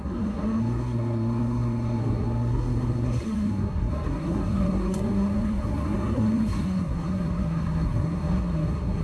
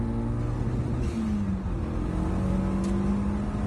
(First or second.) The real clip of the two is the second